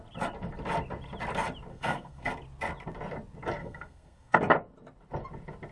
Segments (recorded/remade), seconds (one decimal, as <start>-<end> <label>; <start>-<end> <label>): 0.0-1.7 recorded; 1.7-2.3 remade; 2.3-3.6 recorded; 3.6-4.4 remade; 4.4-5.7 recorded